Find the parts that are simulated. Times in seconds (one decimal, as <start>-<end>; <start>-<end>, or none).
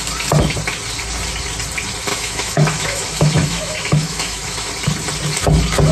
2.1-4.7